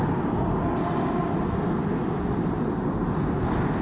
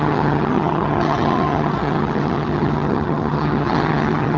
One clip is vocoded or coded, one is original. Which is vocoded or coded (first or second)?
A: second